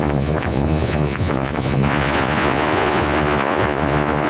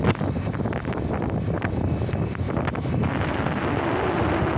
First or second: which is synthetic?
first